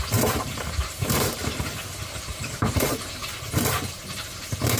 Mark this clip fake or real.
fake